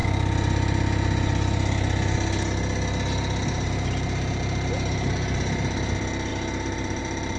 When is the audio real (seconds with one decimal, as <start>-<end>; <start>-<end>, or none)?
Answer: 0.0-7.4